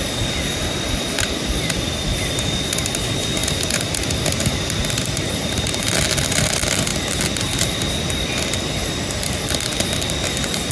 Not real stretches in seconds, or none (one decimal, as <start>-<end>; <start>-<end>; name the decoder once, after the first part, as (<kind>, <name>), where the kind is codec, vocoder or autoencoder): 0.0-3.4 (vocoder, BigVGAN v2); 4.8-6.9; 9.2-10.7